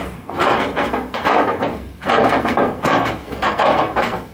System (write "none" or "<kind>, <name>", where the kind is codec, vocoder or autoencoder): codec, SNAC